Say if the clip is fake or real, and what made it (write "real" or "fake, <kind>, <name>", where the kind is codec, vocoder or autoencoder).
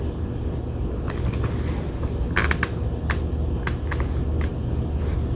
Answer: real